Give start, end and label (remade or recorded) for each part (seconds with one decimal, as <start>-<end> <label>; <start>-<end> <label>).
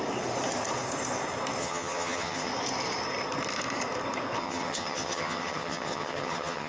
0.0-1.6 recorded; 1.6-2.5 remade; 2.5-4.4 recorded; 4.4-6.7 remade